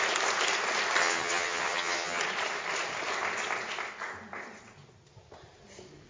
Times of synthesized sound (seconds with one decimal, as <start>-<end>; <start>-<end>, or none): 1.0-2.2